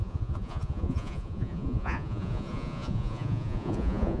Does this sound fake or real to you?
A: fake